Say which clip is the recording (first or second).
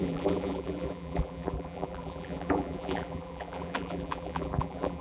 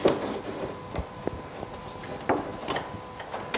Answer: second